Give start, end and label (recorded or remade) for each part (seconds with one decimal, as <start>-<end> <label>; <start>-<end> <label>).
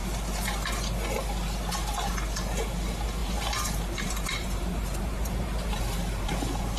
0.0-3.2 recorded; 3.2-6.3 remade; 6.3-6.8 recorded